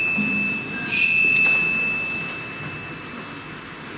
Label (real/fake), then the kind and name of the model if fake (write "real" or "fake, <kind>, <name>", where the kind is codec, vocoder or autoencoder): real